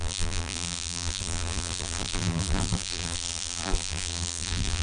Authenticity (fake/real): fake